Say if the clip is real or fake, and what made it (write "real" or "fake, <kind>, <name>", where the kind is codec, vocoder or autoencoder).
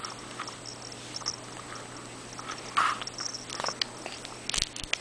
real